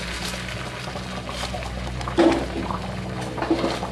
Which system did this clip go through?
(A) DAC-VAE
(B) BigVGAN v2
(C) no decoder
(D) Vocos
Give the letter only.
C